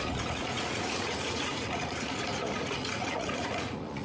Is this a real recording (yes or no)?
no